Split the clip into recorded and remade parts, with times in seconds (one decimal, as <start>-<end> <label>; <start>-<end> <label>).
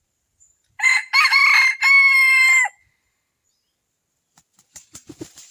0.0-1.4 remade; 1.4-4.7 recorded; 4.7-5.5 remade